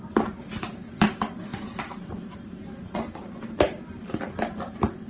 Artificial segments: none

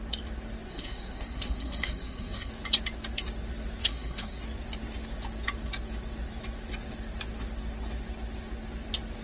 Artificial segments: 0.7-2.5 (codec, SNAC); 3.8-4.4

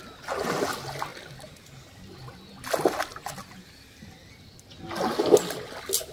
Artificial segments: none

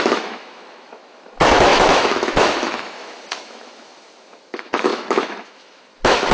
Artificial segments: 0.0-6.3 (autoencoder, DAC-VAE)

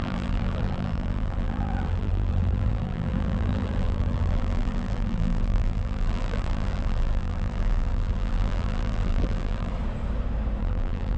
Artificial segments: 0.0-9.7 (vocoder, BigVGAN v2); 10.6-11.2

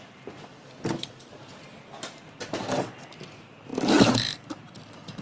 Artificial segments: 1.7-2.4 (vocoder, BigVGAN v2); 3.7-5.2